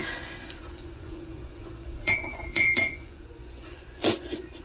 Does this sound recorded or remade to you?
remade